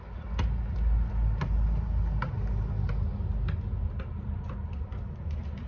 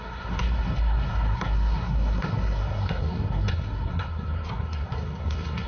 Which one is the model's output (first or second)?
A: second